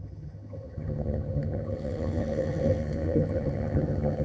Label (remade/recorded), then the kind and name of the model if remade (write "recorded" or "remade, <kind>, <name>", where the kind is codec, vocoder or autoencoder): remade, vocoder, HiFi-GAN